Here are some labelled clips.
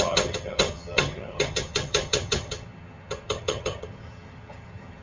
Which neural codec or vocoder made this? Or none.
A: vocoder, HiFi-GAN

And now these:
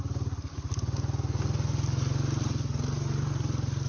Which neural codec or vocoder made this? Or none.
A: none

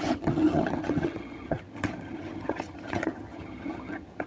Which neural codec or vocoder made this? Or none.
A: vocoder, HiFi-GAN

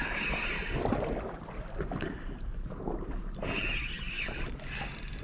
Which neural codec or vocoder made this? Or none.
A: none